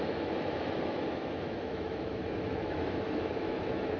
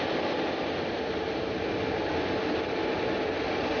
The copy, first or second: first